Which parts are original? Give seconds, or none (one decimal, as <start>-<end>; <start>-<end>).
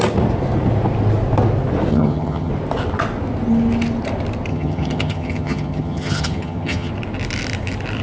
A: 0.0-1.9; 2.5-4.5; 6.9-8.0